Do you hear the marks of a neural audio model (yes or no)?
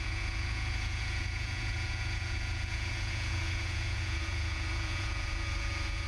yes